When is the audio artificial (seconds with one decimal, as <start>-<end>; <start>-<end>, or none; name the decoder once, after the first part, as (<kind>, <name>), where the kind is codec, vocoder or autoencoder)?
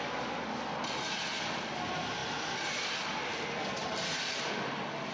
none